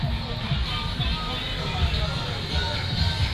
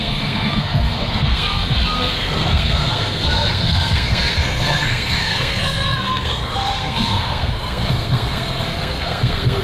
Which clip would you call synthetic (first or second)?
second